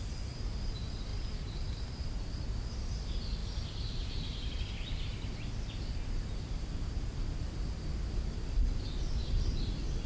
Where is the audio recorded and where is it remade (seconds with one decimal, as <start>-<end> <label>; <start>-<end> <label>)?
0.0-10.1 recorded